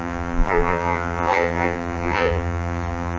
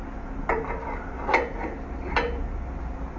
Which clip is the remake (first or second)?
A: first